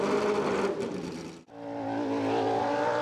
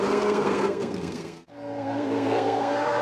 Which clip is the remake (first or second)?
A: second